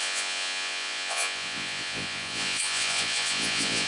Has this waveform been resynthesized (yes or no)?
yes